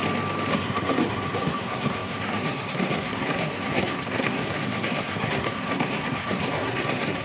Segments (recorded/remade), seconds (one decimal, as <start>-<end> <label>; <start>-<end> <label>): 0.0-0.5 recorded; 0.5-7.2 remade